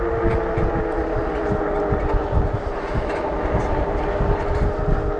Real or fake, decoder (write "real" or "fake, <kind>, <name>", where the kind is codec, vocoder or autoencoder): real